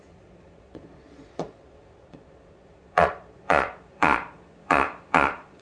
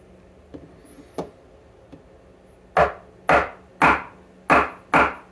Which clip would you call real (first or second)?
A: second